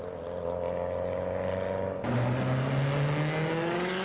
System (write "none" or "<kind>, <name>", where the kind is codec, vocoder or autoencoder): none